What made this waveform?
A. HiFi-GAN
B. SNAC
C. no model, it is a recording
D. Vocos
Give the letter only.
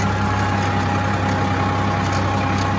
C